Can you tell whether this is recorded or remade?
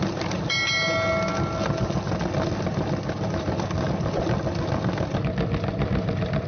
recorded